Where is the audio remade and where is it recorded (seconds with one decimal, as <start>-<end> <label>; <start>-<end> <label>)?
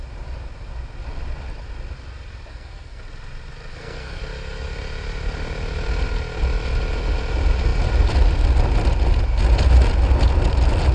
0.0-2.5 recorded; 2.5-3.0 remade; 3.0-3.7 recorded; 3.7-4.2 remade; 4.2-10.9 recorded